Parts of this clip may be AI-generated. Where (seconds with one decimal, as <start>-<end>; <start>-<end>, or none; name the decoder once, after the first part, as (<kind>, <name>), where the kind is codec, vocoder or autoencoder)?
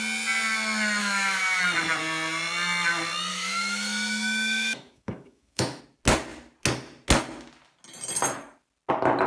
1.0-1.6 (autoencoder, DAC-VAE); 3.3-5.8